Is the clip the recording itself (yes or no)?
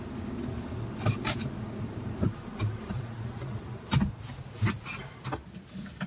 yes